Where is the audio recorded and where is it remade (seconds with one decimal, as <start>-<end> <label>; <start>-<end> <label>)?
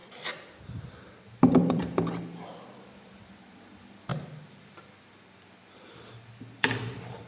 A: 0.0-4.1 remade; 4.1-4.7 recorded; 4.7-7.3 remade